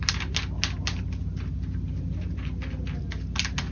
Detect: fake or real real